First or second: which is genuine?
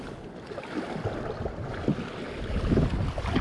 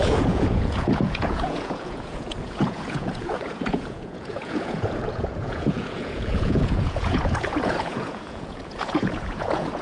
first